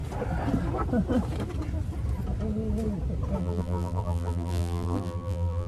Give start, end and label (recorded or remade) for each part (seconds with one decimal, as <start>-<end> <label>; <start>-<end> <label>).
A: 0.0-3.4 recorded; 3.4-5.7 remade